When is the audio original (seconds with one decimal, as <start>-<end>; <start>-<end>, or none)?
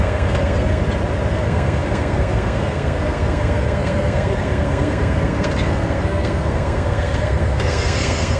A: 0.8-1.3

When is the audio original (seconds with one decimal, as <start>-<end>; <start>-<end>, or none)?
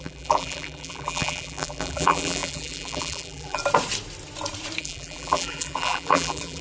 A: 3.6-4.8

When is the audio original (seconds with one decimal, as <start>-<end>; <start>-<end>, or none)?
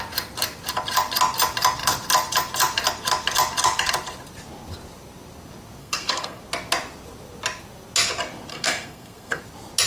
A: 0.0-5.8; 6.4-8.5; 9.4-9.9